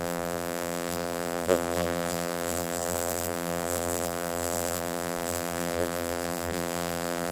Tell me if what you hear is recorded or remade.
remade